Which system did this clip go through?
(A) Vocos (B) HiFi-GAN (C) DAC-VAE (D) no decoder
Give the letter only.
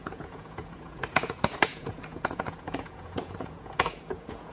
A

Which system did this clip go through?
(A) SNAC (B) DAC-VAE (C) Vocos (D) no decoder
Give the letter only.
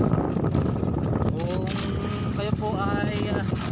D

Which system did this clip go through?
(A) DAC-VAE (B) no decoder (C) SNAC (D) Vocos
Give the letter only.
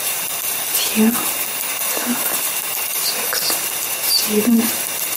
B